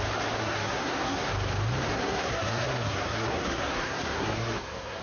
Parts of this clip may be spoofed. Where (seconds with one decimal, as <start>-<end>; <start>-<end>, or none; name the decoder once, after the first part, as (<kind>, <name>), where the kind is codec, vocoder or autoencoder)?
0.4-1.3 (codec, SNAC); 1.9-5.0